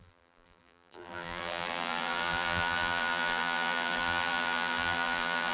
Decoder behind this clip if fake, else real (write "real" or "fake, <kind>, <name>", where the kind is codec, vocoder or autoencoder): fake, vocoder, BigVGAN v2